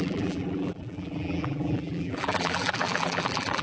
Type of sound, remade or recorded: remade